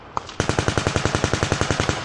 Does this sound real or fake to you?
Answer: real